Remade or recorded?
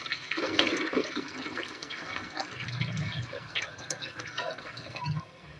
remade